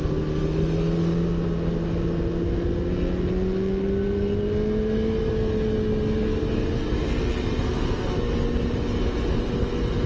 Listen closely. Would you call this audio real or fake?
real